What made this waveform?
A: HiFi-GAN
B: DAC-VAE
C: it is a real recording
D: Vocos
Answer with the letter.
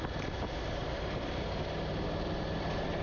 C